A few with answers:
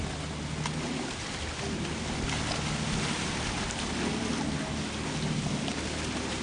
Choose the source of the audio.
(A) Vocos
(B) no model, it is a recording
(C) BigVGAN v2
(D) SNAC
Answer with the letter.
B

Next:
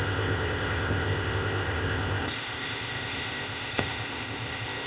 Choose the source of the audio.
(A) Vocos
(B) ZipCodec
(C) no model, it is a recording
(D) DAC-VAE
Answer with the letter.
B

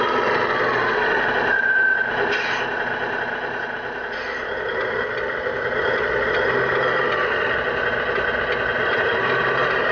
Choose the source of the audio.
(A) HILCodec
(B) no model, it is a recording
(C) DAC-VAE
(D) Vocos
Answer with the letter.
B